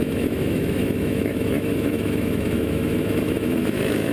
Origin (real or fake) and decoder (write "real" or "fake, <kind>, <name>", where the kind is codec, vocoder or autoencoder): fake, autoencoder, DAC-VAE